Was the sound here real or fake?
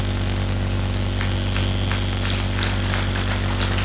real